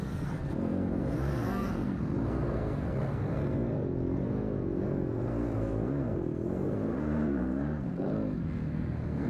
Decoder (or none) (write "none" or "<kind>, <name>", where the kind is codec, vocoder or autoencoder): codec, SNAC